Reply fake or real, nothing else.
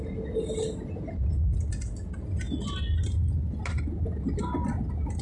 real